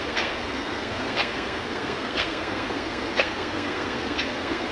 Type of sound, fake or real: fake